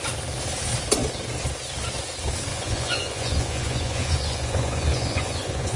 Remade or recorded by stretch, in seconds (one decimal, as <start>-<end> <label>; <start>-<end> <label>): 0.0-2.5 recorded; 2.5-5.8 remade